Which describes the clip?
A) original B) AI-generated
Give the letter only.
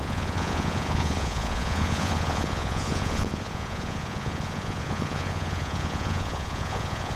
B